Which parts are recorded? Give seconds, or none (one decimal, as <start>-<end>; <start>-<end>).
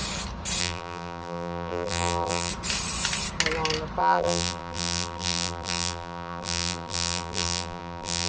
0.0-0.6; 2.5-4.0